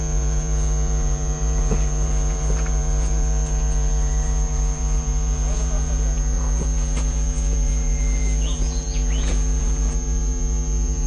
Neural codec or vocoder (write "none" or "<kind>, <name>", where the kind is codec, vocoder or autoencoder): vocoder, Vocos